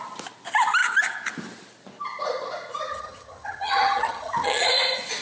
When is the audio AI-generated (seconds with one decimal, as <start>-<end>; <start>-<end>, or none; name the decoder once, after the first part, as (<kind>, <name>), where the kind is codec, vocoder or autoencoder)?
2.9-4.7 (vocoder, HiFi-GAN)